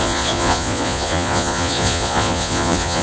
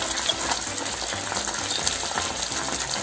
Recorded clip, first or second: second